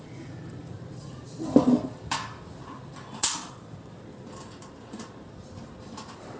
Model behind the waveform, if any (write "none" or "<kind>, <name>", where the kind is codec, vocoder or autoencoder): vocoder, BigVGAN v2